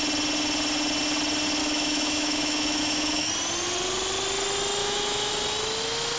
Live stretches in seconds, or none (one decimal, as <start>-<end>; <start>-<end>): 0.0-1.6; 3.3-4.8; 5.3-6.2